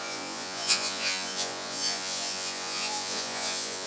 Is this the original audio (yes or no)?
no